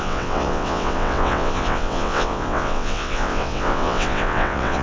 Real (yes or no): no